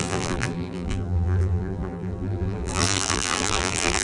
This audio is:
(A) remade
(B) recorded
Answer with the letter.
A